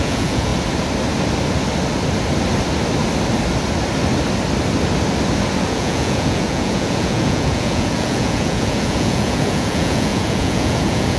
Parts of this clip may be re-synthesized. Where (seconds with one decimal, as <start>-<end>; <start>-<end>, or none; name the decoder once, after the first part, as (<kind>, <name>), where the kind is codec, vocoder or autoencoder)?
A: 0.0-0.5 (vocoder, Vocos); 5.6-11.2